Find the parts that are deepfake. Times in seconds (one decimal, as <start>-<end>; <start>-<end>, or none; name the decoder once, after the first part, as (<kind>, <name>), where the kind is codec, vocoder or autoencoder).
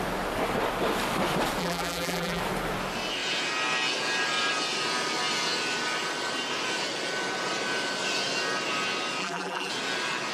1.6-2.4 (vocoder, BigVGAN v2); 9.2-9.7